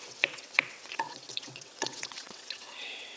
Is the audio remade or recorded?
remade